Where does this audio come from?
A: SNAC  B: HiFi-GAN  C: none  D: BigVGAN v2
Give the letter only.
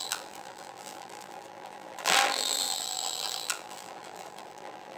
D